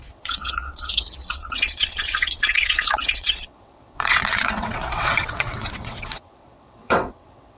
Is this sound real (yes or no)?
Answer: no